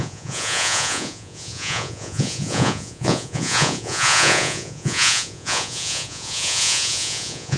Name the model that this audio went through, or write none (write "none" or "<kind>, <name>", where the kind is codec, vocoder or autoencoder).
vocoder, Vocos